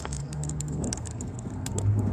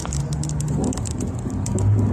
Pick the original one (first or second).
second